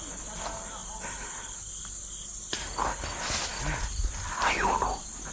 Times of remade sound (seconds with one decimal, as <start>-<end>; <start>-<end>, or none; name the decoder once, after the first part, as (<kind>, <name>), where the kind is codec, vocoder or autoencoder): none